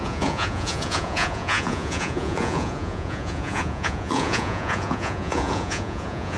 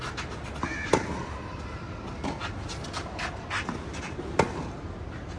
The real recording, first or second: second